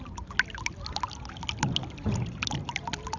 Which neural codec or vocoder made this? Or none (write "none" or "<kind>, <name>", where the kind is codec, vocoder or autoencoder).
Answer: none